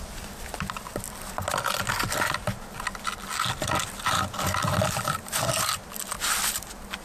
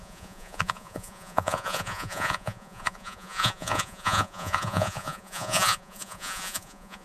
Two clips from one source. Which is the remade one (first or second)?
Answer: second